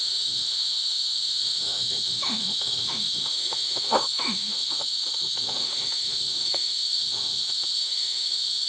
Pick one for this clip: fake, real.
fake